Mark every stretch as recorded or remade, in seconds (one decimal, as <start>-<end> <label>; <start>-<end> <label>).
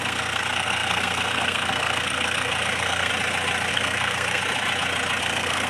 0.0-3.1 remade; 3.1-3.7 recorded; 3.7-4.4 remade; 4.4-5.2 recorded; 5.2-5.7 remade